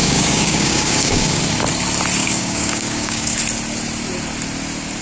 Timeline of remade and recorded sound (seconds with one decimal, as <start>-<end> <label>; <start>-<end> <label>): 0.0-1.4 remade; 1.4-2.2 recorded; 2.2-3.4 remade; 3.4-5.0 recorded